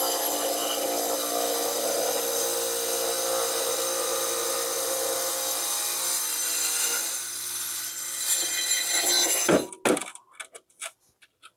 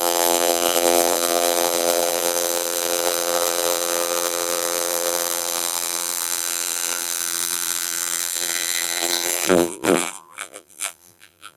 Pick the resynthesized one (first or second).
second